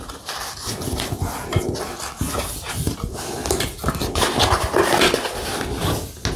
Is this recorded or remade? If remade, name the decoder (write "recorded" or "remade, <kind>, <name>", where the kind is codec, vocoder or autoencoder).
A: recorded